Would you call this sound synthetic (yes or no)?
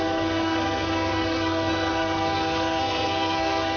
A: yes